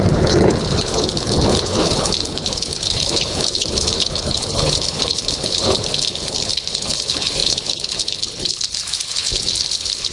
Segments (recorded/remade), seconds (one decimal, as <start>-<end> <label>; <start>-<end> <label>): 0.0-10.1 remade